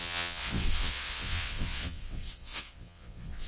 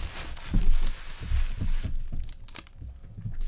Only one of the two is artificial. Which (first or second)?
first